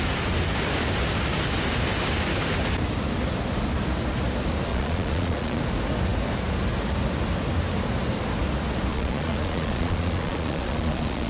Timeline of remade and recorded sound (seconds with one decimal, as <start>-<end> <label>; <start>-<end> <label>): 0.0-4.7 recorded; 4.7-5.6 remade; 5.6-8.9 recorded; 8.9-11.3 remade